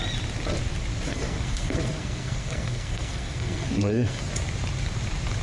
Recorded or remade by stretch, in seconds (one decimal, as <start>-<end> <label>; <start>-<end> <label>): 0.0-1.1 recorded; 1.1-4.3 remade; 4.3-5.4 recorded